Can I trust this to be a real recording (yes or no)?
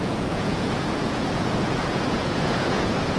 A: no